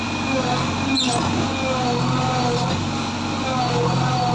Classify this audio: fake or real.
real